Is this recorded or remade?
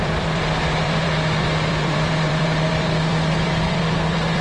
remade